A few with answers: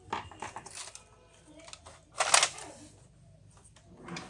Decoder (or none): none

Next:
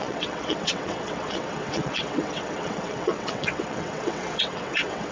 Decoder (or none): vocoder, WaveNeXt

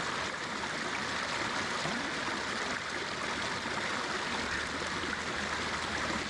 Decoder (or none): none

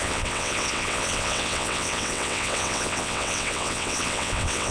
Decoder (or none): vocoder, WaveNeXt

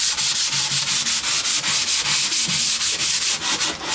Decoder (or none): none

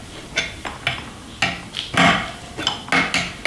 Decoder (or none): none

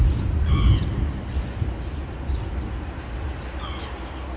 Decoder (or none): none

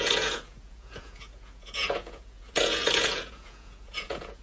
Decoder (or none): vocoder, Vocos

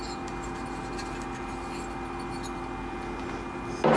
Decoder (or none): none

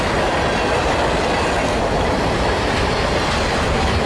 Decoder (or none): none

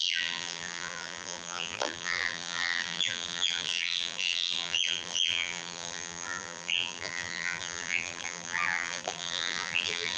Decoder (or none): vocoder, BigVGAN v2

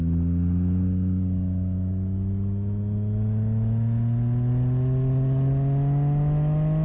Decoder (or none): none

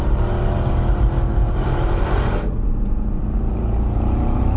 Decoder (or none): vocoder, BigVGAN v2